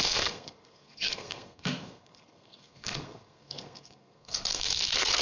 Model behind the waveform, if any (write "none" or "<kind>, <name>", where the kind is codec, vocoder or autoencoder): codec, SNAC